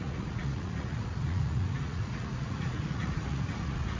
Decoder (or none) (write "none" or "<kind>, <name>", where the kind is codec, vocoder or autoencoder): vocoder, Vocos